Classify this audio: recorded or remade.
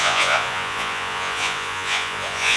remade